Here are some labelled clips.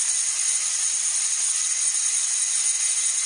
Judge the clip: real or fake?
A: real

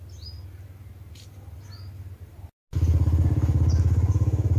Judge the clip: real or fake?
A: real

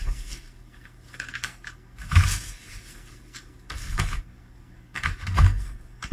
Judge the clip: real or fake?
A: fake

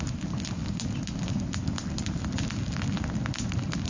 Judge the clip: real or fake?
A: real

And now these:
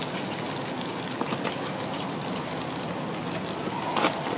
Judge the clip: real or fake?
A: real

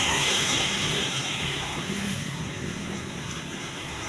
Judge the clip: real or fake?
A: fake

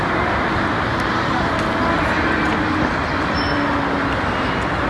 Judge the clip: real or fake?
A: real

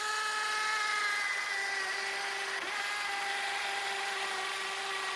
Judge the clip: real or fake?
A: real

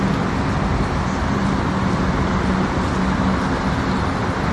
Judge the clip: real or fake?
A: real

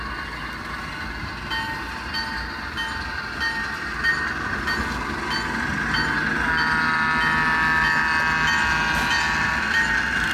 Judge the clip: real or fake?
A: real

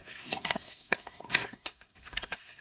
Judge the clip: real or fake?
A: fake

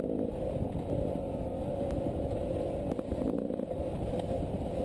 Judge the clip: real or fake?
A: real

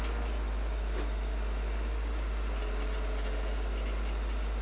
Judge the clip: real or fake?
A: real